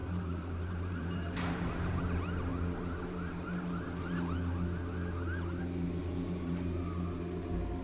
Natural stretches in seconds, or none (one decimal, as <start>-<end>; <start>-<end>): 2.0-6.0; 7.1-7.8